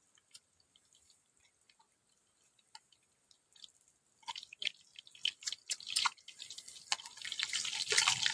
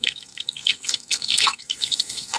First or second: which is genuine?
first